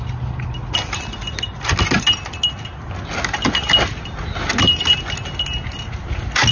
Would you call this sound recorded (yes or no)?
yes